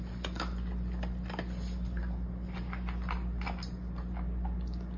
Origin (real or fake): real